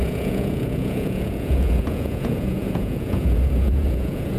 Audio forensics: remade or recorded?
remade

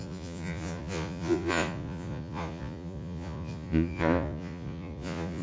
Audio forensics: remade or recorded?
remade